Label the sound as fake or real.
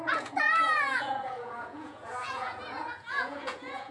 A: fake